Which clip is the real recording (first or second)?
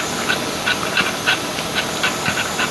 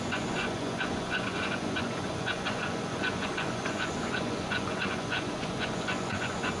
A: first